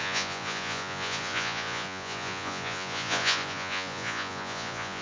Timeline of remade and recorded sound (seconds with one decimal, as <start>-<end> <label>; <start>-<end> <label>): 0.0-5.0 remade